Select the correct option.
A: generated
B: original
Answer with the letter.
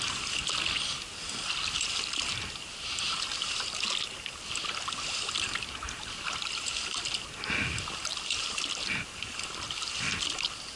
B